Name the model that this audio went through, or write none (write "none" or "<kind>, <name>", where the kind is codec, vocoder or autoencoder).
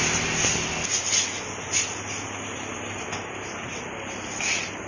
none